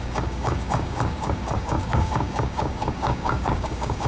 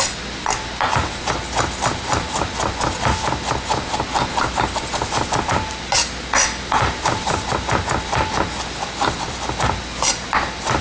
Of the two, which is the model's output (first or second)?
first